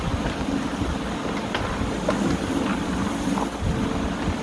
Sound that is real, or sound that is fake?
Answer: real